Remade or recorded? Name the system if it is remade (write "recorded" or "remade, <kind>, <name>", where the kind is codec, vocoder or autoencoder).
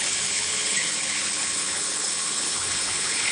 remade, codec, HILCodec